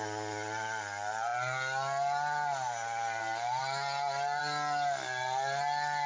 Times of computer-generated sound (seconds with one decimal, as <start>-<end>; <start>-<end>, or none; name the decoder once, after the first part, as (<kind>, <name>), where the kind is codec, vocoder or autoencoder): none